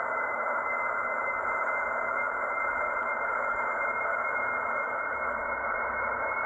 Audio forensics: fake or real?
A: fake